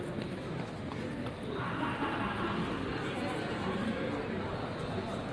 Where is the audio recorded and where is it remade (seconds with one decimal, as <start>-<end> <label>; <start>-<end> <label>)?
0.0-5.3 recorded